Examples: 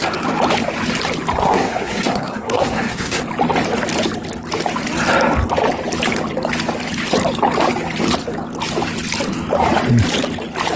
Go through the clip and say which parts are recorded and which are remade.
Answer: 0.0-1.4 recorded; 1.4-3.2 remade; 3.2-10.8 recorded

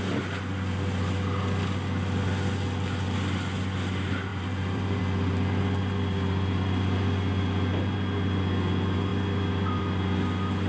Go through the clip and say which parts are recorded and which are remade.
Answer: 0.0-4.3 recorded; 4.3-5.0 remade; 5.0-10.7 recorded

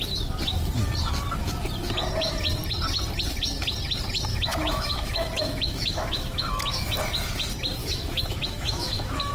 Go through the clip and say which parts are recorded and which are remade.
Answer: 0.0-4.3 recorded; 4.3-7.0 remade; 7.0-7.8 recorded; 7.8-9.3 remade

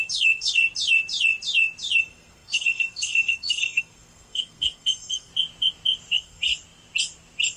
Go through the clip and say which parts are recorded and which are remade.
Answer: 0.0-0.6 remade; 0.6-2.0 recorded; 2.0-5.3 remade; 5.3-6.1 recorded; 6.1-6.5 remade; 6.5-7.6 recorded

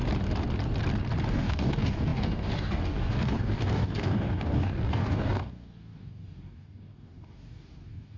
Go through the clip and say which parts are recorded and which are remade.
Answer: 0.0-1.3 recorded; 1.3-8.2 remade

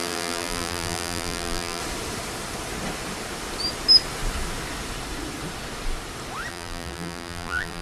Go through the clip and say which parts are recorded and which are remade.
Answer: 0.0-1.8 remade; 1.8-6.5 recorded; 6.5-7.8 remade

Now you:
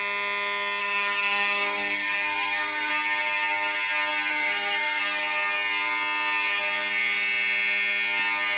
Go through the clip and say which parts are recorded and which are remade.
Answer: 0.0-0.8 recorded; 0.8-2.9 remade; 2.9-4.3 recorded; 4.3-5.0 remade; 5.0-8.6 recorded

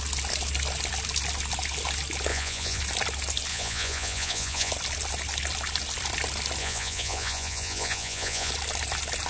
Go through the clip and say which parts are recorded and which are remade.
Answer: 0.0-2.3 recorded; 2.3-2.8 remade; 2.8-3.5 recorded; 3.5-4.7 remade; 4.7-6.6 recorded; 6.6-8.5 remade; 8.5-9.3 recorded